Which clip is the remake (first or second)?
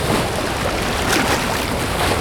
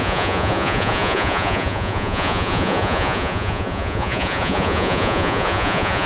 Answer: second